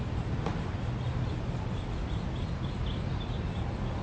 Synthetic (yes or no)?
no